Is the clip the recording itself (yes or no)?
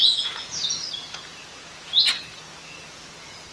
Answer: no